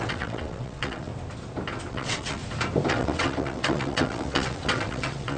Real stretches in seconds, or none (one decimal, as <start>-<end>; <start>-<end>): 1.1-1.9; 2.4-2.9